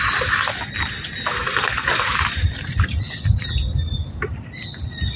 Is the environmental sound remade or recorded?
recorded